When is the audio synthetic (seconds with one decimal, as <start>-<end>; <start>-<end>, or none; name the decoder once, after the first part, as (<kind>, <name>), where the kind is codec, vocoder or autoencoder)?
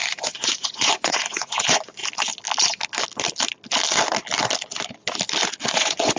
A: 0.0-2.0 (vocoder, Vocos); 5.7-6.2